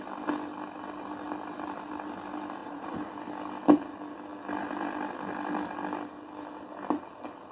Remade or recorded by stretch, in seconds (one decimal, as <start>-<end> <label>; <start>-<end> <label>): 0.0-2.6 recorded; 2.6-3.1 remade; 3.1-7.5 recorded